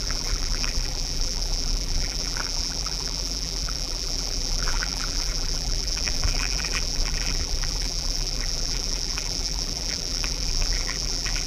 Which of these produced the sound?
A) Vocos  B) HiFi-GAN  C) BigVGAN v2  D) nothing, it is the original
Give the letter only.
C